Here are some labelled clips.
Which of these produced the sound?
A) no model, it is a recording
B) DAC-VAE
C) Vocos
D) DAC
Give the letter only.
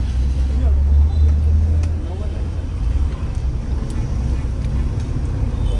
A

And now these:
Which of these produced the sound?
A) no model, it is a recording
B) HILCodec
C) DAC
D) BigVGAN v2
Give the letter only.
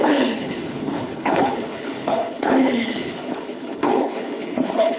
B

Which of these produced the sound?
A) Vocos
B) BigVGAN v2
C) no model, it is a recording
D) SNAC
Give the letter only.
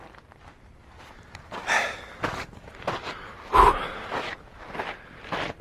B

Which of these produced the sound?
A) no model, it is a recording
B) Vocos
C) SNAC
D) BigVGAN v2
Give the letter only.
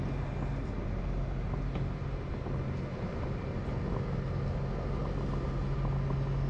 A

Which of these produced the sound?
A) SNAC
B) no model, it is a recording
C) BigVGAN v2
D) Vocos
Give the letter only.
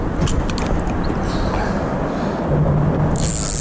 B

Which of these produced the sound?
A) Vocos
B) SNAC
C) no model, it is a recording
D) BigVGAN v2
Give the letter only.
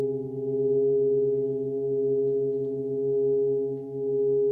C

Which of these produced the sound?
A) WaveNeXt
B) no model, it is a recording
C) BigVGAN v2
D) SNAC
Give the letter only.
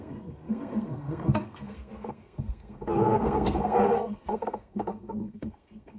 D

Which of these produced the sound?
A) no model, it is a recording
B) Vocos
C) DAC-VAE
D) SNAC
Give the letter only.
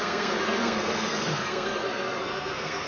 D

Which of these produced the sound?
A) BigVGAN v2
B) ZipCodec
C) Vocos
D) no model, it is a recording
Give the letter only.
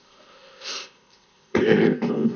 B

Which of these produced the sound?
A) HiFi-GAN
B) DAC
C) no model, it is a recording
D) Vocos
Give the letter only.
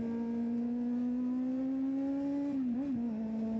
C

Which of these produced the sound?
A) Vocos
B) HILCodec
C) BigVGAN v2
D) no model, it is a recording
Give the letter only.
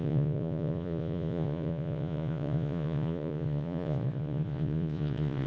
A